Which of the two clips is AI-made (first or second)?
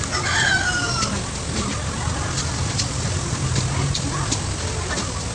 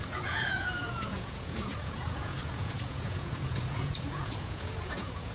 second